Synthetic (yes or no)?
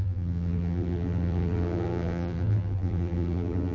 yes